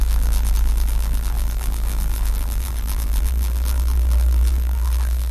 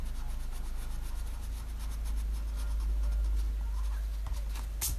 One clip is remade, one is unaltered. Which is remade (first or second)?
first